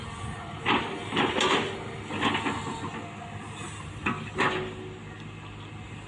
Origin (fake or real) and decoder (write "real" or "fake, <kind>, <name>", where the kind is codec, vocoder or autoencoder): real